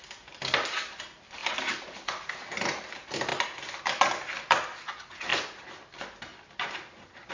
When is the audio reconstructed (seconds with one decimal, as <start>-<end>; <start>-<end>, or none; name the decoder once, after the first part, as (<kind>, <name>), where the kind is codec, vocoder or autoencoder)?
none